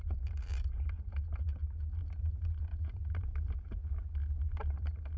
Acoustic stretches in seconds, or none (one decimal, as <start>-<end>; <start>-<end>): 1.6-2.2; 3.8-4.4